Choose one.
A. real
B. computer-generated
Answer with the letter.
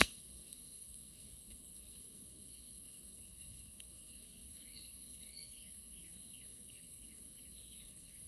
B